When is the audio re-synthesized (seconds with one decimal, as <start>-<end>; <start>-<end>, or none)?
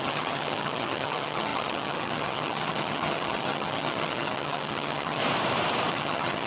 0.0-5.2; 5.9-6.5